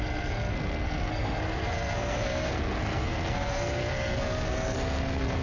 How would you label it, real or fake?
fake